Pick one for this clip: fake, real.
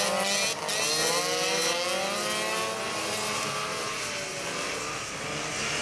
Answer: real